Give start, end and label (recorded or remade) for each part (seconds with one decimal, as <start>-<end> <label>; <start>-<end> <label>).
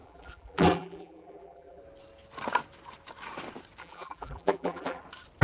0.0-1.8 remade; 1.8-3.8 recorded; 3.8-5.0 remade; 5.0-5.4 recorded